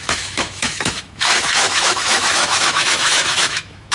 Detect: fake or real fake